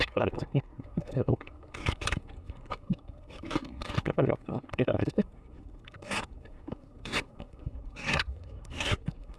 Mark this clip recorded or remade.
remade